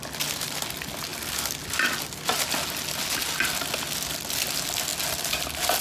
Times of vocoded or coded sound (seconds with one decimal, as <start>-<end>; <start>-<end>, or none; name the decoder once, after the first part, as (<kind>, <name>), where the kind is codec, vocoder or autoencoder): none